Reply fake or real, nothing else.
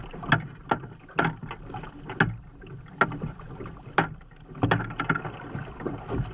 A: real